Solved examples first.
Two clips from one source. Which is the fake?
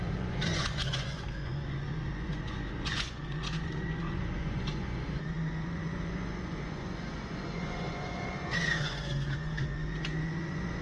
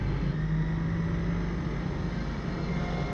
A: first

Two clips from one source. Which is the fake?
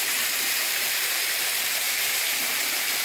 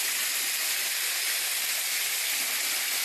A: first